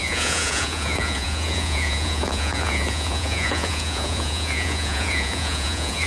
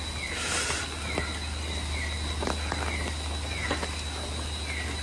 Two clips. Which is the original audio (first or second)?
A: second